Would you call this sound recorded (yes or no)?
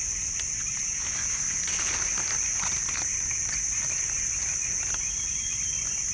yes